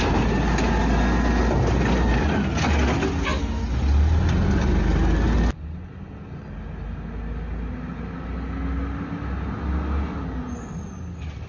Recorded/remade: recorded